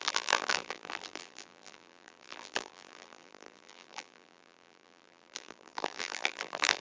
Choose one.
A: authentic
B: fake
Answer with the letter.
B